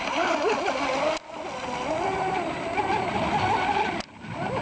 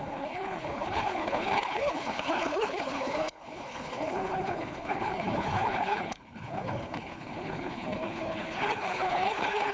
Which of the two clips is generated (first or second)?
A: second